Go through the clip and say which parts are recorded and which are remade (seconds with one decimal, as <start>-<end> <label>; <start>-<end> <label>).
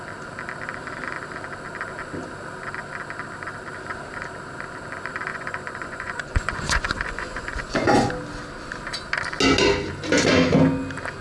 0.0-5.3 recorded; 5.3-8.1 remade; 8.1-11.2 recorded